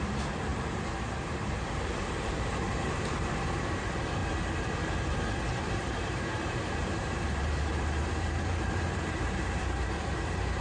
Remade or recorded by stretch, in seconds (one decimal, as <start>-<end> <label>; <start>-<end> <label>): 0.0-4.2 remade; 4.2-5.7 recorded; 5.7-10.6 remade